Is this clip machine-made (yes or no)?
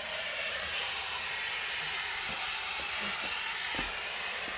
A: yes